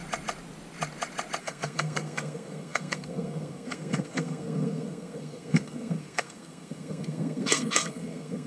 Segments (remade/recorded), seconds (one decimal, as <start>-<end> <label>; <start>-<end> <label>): 0.0-1.4 recorded; 1.4-8.5 remade